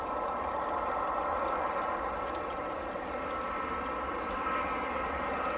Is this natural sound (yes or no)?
yes